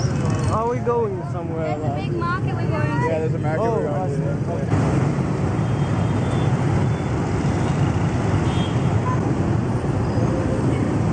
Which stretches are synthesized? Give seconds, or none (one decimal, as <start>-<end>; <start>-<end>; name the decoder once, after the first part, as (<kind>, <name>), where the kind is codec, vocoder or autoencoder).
3.9-5.9 (vocoder, BigVGAN v2)